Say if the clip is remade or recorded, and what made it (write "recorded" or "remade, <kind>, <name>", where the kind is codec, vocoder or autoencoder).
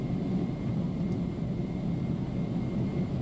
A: recorded